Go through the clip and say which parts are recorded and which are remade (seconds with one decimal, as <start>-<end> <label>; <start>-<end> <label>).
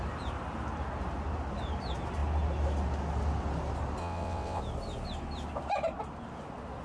0.0-4.0 recorded; 4.0-4.6 remade; 4.6-6.8 recorded